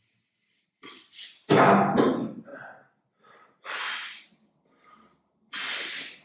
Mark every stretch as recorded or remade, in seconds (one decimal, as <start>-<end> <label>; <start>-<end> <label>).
0.0-6.2 recorded